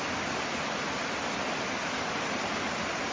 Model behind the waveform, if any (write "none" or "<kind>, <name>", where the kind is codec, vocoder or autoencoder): none